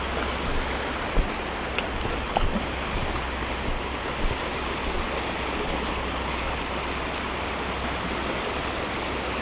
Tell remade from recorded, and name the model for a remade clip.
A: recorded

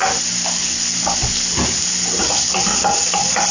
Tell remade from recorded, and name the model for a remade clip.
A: recorded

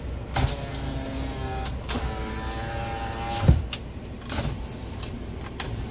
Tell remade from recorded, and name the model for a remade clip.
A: recorded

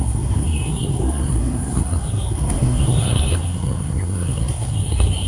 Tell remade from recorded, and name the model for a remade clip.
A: remade, codec, SNAC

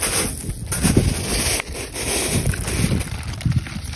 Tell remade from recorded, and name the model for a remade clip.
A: recorded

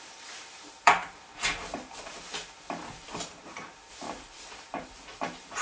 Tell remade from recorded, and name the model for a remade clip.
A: remade, vocoder, BigVGAN v2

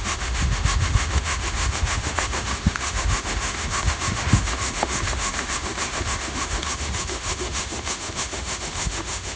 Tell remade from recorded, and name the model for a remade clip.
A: remade, autoencoder, DAC-VAE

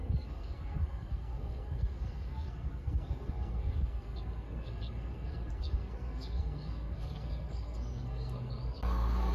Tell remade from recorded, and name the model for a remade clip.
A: remade, codec, SNAC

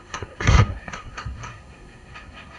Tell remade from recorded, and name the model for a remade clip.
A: remade, codec, SNAC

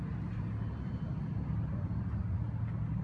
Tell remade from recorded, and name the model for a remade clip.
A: recorded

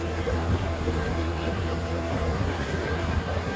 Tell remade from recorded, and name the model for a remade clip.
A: remade, codec, SNAC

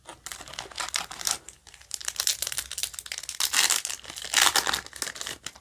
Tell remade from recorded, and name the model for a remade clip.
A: recorded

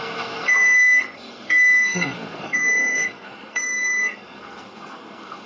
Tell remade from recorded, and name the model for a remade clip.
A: remade, codec, SNAC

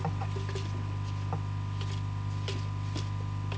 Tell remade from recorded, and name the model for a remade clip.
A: recorded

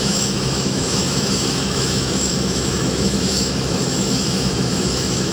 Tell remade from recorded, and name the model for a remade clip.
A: remade, autoencoder, DAC-VAE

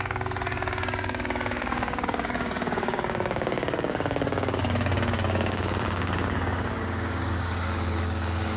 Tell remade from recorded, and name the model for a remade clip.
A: remade, codec, DAC